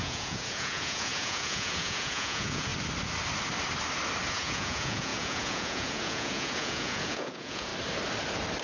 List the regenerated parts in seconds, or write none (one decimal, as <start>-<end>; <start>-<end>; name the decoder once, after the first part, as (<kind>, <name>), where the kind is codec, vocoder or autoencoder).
0.0-2.7 (vocoder, Vocos); 4.3-7.7